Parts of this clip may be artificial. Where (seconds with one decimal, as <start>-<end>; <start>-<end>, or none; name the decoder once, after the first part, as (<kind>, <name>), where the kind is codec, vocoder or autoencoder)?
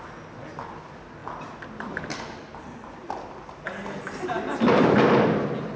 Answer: none